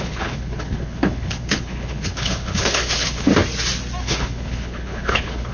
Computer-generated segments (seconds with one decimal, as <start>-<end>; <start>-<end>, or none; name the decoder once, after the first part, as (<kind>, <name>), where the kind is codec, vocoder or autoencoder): 0.0-3.3 (codec, HILCodec); 4.0-5.5